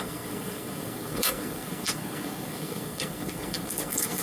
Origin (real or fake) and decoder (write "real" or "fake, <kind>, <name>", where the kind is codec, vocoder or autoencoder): fake, codec, SNAC